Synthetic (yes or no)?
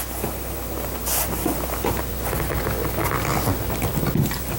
no